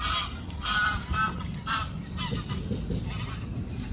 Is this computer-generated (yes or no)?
no